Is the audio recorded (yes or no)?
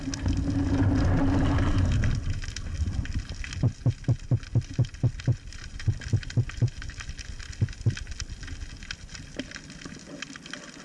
yes